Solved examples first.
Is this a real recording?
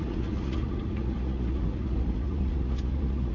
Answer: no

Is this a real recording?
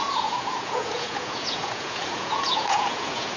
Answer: no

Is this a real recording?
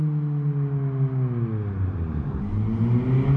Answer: yes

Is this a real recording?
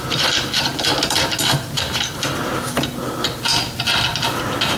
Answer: yes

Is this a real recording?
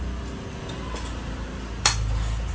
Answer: yes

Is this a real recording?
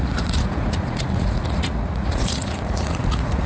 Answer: no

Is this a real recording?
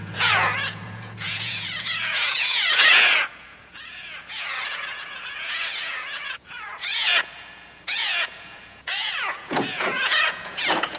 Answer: no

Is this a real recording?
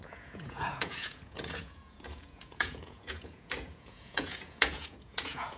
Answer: no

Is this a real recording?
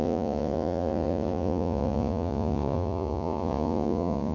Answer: no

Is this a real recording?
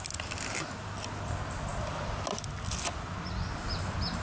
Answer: yes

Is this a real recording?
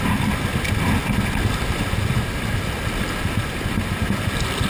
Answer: yes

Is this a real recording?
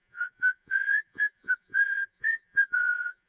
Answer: no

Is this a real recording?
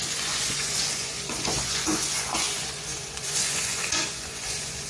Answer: no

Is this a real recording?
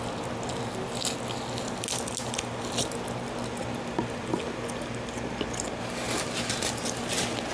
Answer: yes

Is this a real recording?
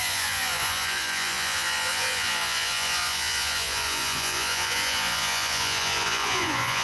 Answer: no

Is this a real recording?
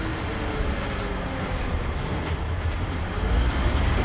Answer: yes